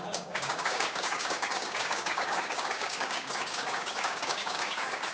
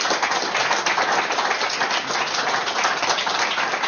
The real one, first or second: second